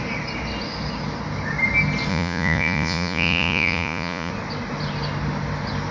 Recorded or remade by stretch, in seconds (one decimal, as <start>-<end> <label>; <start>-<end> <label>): 0.0-2.1 recorded; 2.1-4.3 remade; 4.3-5.9 recorded